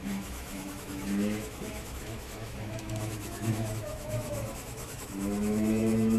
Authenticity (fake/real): fake